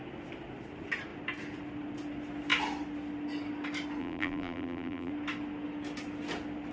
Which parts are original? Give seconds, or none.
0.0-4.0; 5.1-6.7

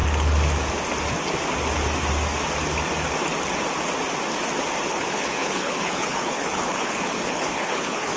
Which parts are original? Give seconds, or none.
0.0-4.9

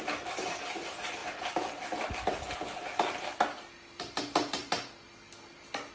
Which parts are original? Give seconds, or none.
0.0-5.9

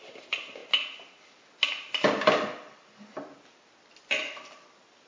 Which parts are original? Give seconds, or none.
0.6-3.5

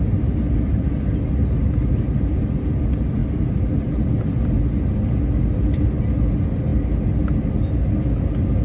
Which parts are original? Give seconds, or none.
0.0-8.6